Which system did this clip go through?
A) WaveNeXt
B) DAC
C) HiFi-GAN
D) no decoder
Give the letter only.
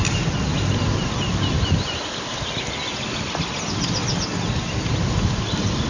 D